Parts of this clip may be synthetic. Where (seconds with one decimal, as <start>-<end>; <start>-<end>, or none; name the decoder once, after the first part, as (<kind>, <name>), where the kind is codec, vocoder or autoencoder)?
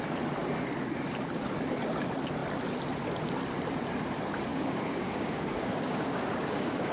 4.5-6.9 (codec, DAC)